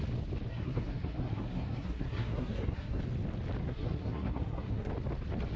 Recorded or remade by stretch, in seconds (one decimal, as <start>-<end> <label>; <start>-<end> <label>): 0.0-0.5 recorded; 0.5-3.0 remade; 3.0-3.6 recorded; 3.6-4.9 remade; 4.9-5.6 recorded